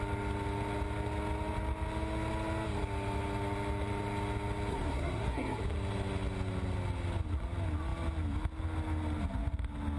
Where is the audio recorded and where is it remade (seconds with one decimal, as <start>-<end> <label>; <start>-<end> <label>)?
0.0-4.7 recorded; 4.7-5.6 remade; 5.6-10.0 recorded

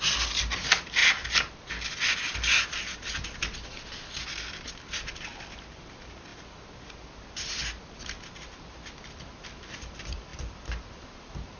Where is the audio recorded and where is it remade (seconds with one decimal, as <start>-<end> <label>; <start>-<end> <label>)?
0.0-1.0 remade; 1.0-4.5 recorded; 4.5-6.3 remade; 6.3-7.8 recorded; 7.8-11.6 remade

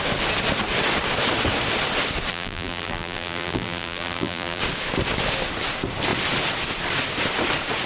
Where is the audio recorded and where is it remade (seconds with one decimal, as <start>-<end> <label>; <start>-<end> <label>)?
0.0-2.3 recorded; 2.3-4.6 remade; 4.6-7.9 recorded

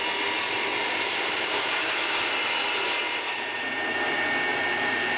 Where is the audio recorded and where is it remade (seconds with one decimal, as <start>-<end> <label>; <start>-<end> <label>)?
0.0-0.7 recorded; 0.7-2.4 remade; 2.4-4.5 recorded; 4.5-5.2 remade

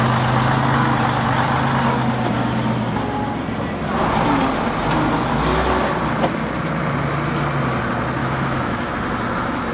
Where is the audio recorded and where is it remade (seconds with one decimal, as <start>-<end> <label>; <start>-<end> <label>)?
0.0-8.2 recorded; 8.2-8.9 remade; 8.9-9.7 recorded